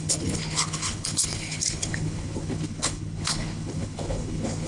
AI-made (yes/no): yes